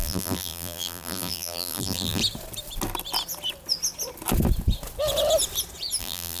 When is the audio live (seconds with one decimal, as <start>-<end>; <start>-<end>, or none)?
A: 2.2-6.0